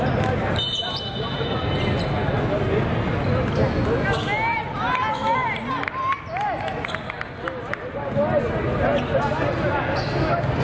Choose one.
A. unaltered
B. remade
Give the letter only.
A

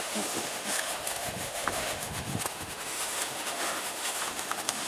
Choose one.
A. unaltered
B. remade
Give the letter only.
B